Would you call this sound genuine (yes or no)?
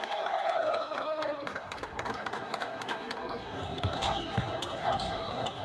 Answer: no